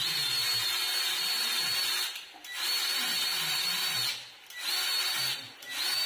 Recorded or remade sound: recorded